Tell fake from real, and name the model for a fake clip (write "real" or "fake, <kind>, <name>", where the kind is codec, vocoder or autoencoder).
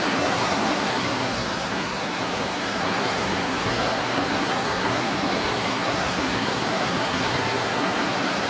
fake, codec, SNAC